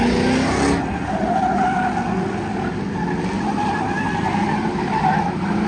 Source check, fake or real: real